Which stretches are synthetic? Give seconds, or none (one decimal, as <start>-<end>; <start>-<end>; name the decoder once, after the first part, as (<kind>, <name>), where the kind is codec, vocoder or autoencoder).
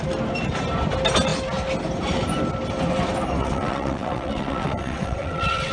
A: 3.4-5.7 (vocoder, WaveNeXt)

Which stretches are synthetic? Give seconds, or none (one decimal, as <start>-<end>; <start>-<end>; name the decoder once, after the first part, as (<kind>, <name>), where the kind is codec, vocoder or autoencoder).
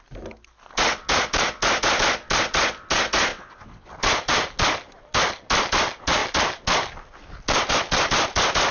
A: 3.3-3.9 (vocoder, WaveNeXt)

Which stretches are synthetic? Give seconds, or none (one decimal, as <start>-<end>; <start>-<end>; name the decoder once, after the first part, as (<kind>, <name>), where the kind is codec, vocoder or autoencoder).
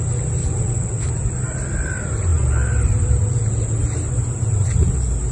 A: 0.4-1.1 (vocoder, WaveNeXt)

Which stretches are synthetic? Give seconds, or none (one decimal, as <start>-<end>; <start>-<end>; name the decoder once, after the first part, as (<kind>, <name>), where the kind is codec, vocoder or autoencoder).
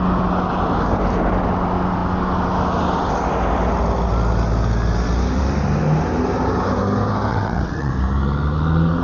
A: 7.3-7.9 (vocoder, WaveNeXt)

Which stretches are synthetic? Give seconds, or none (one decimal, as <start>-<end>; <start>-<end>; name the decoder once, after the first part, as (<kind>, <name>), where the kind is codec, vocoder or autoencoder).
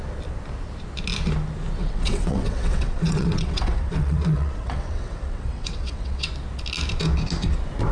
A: 1.8-6.3 (vocoder, WaveNeXt)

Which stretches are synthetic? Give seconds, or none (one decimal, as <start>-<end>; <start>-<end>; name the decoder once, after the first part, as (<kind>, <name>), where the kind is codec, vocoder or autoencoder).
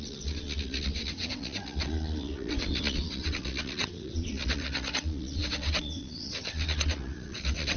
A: 0.0-7.8 (vocoder, WaveNeXt)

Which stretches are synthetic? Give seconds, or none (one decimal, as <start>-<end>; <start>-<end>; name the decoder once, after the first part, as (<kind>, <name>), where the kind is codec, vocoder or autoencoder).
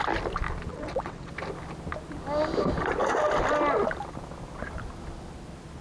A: 0.7-1.3 (vocoder, WaveNeXt)